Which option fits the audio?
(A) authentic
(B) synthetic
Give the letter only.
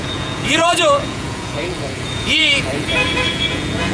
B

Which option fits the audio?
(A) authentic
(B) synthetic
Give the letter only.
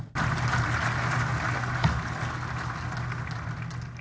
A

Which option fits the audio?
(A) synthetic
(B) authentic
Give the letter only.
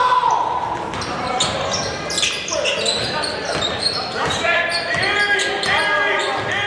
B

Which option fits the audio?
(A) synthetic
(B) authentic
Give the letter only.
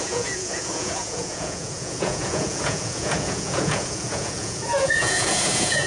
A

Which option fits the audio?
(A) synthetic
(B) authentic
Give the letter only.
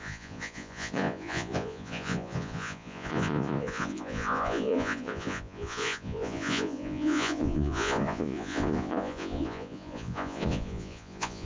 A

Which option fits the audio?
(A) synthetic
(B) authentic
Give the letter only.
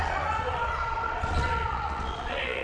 A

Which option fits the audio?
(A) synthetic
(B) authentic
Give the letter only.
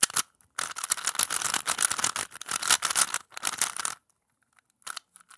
B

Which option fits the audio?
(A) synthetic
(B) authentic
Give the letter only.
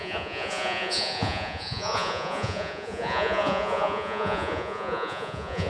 A